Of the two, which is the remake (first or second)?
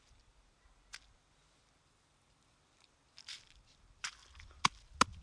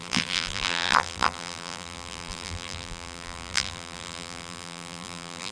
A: second